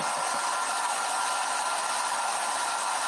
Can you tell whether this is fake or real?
real